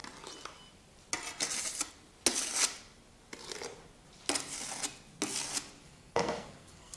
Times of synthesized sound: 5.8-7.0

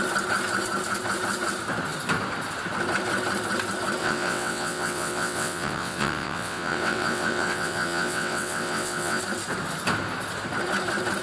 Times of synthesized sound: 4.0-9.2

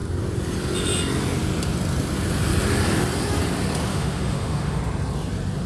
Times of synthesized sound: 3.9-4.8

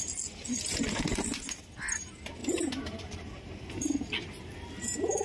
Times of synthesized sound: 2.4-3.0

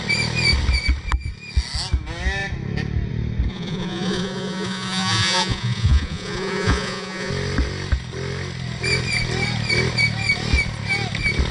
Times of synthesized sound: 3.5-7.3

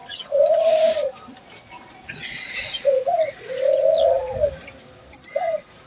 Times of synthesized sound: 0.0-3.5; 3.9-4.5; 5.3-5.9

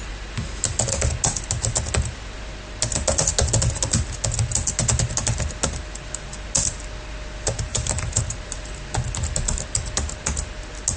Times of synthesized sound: 7.7-8.6